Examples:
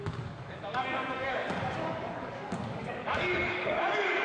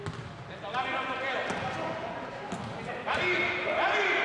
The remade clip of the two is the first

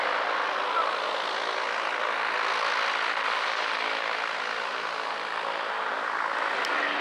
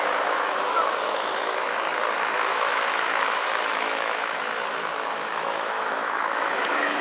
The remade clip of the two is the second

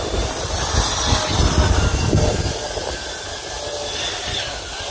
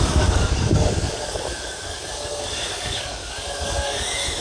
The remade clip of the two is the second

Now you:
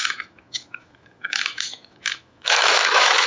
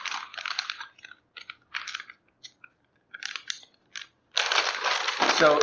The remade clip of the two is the first